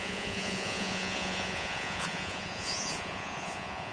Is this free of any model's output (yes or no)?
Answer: no